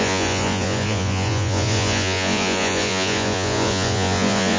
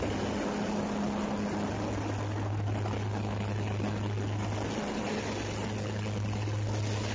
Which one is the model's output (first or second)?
first